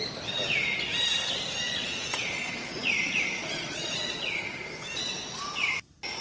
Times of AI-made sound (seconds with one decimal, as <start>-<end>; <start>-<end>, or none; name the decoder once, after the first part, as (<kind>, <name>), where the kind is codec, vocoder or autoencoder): 1.8-4.4 (vocoder, Vocos)